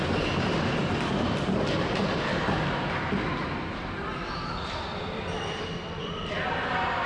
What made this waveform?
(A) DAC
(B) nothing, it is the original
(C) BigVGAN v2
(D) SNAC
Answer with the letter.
B